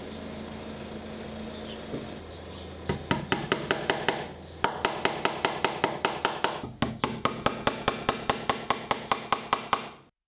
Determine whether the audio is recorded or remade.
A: recorded